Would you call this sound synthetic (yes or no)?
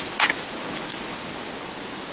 no